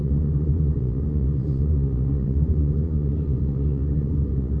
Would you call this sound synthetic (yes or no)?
yes